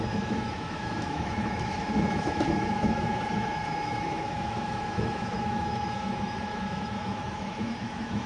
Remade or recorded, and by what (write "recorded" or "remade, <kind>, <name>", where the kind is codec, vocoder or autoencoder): remade, autoencoder, DAC-VAE